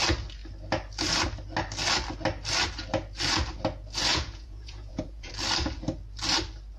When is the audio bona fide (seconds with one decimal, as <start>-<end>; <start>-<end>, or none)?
0.0-4.1; 5.3-6.8